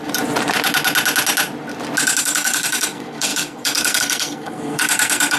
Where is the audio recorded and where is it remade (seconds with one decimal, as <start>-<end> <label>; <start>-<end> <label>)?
0.0-2.2 recorded; 2.2-5.4 remade